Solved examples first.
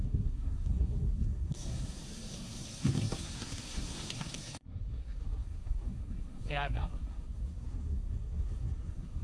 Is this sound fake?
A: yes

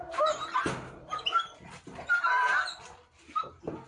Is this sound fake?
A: no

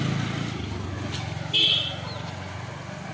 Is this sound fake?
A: no